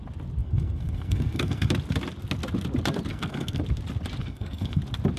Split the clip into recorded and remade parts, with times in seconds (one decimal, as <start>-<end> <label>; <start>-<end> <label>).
0.0-0.4 recorded; 0.4-1.7 remade; 1.7-3.1 recorded; 3.1-3.6 remade; 3.6-4.2 recorded; 4.2-4.8 remade; 4.8-5.2 recorded